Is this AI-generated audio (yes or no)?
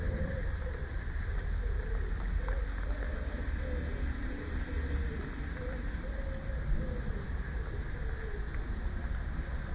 no